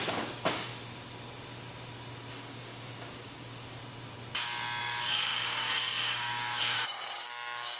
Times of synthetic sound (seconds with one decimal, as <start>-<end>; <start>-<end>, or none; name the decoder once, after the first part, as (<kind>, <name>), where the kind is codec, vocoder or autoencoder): 0.0-0.7 (codec, DAC); 2.3-3.8; 4.8-7.8